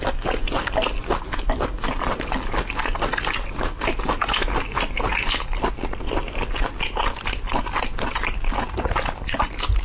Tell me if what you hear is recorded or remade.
recorded